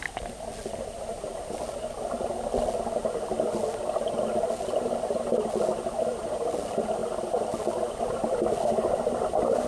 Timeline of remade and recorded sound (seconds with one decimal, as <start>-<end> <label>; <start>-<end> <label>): 0.0-9.7 recorded

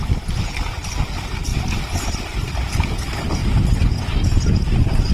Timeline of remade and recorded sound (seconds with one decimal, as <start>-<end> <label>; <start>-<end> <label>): 0.0-5.1 recorded